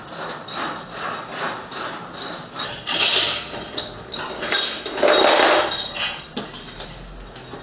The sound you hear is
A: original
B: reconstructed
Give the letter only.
A